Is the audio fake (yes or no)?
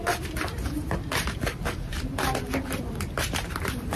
yes